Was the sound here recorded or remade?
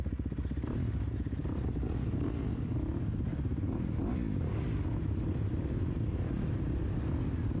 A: recorded